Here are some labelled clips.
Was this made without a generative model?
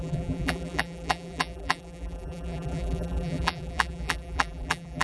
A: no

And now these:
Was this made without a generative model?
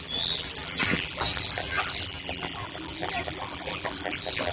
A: no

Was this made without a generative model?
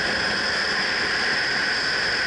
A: yes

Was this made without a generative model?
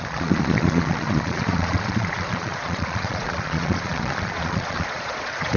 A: no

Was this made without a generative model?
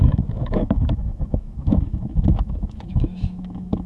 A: no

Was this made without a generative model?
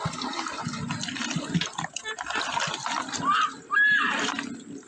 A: yes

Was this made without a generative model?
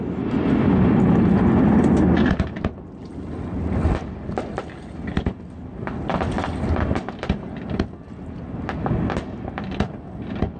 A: yes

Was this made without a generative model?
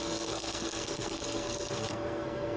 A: no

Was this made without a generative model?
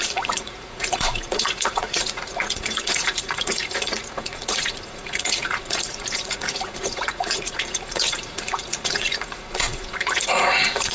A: no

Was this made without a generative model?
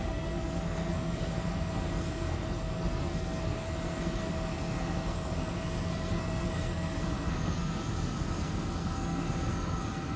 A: no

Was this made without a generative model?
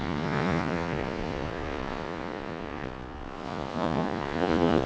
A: no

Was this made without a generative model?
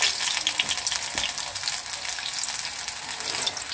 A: yes